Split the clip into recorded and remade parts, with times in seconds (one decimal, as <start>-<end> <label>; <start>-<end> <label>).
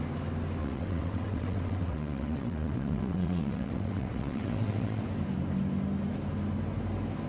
0.0-0.6 recorded; 0.6-5.0 remade; 5.0-7.3 recorded